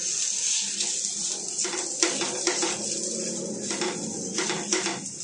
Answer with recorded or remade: recorded